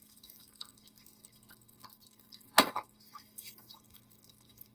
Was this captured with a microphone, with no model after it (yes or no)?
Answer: no